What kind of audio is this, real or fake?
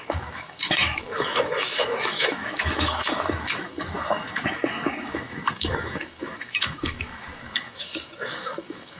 fake